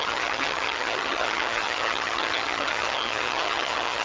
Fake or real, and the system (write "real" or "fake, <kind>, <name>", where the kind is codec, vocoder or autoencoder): fake, vocoder, HiFi-GAN